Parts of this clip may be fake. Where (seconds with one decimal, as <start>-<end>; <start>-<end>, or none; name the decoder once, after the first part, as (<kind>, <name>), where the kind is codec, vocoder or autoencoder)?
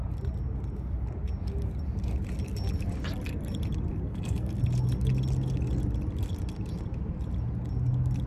4.1-4.6 (codec, SNAC)